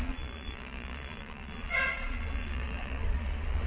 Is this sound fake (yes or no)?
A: yes